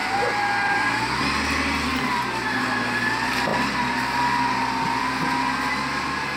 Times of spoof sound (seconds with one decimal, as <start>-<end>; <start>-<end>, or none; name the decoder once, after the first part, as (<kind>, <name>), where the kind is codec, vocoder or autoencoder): none